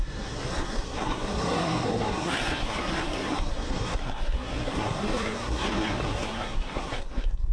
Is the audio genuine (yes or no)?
no